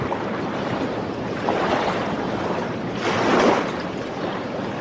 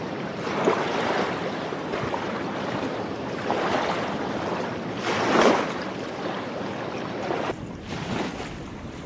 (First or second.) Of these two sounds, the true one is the first